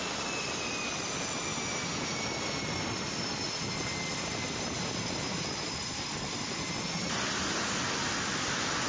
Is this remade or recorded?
recorded